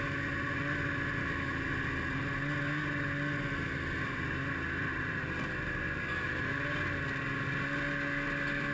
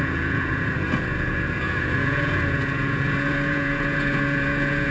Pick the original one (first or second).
first